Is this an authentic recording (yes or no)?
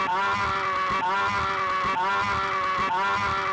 yes